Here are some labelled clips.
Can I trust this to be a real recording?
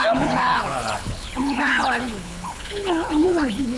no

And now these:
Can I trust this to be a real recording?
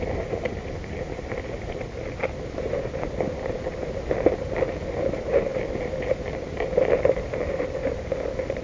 yes